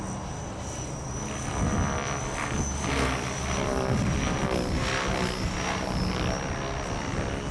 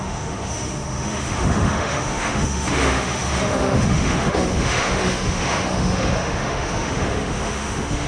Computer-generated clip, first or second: second